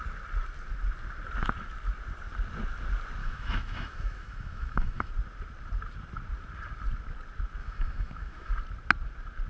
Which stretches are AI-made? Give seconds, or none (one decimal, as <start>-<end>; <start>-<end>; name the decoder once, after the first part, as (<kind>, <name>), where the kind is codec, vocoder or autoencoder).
3.2-5.1 (autoencoder, DAC-VAE); 7.6-8.5